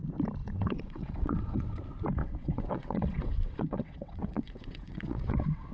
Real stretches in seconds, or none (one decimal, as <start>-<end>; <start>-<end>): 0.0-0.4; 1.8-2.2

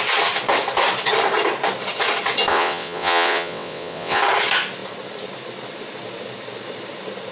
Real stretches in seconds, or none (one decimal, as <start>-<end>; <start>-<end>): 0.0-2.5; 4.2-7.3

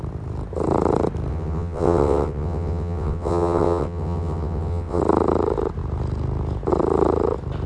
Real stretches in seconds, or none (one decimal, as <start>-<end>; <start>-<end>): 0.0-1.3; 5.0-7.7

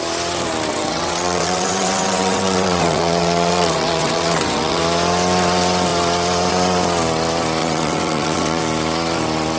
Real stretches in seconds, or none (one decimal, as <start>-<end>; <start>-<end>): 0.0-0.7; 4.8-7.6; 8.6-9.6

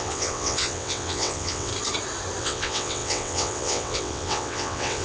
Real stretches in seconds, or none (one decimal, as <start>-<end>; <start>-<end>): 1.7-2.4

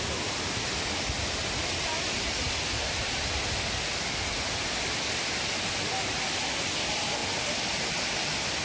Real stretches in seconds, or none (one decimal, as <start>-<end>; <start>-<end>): 0.0-8.6